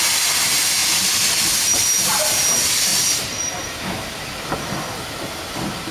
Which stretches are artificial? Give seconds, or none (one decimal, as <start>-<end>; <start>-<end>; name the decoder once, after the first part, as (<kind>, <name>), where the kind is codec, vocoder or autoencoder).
none